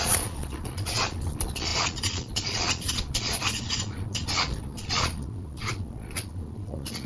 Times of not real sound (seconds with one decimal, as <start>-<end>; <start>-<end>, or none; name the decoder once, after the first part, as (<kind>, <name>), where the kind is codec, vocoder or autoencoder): 0.0-7.1 (vocoder, Vocos)